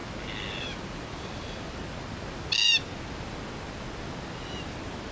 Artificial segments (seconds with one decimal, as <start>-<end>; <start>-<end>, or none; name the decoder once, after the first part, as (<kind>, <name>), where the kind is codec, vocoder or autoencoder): none